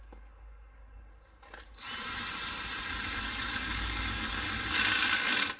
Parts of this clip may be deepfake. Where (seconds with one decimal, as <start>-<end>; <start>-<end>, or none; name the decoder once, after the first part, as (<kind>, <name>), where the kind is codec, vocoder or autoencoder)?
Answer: 0.0-0.8 (codec, DAC); 3.2-4.3